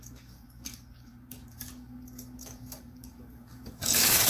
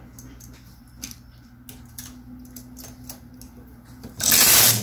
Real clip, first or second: second